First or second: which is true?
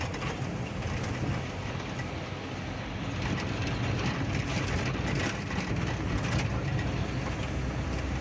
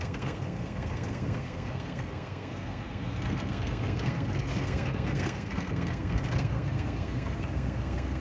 first